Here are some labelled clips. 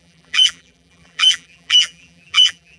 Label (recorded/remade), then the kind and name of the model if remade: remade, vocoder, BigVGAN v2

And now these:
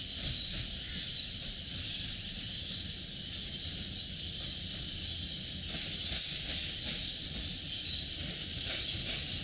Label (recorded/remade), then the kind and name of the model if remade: recorded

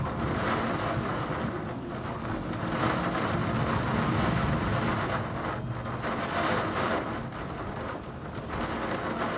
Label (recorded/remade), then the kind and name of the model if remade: recorded